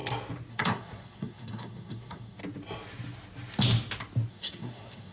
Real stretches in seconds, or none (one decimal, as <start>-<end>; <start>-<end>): 0.0-0.5; 2.4-4.3